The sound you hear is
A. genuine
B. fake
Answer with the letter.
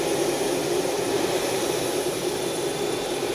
A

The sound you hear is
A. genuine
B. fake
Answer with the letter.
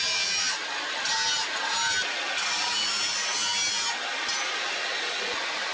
A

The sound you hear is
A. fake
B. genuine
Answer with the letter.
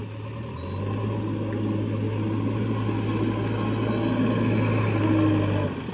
B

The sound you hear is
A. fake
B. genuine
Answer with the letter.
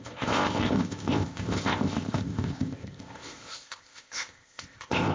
A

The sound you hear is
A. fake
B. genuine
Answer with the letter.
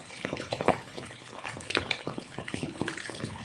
A